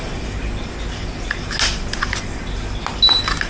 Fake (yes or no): no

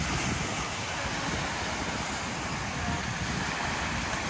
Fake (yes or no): no